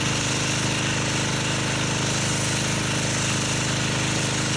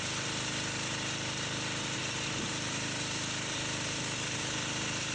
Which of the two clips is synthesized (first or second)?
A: second